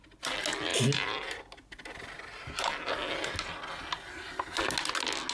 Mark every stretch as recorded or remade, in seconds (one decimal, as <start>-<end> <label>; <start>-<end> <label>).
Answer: 0.0-5.3 recorded